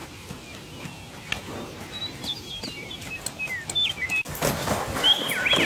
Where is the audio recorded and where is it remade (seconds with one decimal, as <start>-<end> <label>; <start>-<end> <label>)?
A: 0.0-5.6 recorded